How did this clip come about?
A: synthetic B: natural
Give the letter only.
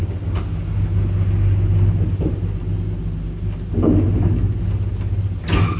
B